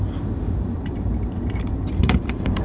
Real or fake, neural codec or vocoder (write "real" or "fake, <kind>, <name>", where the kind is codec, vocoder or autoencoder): fake, vocoder, BigVGAN v2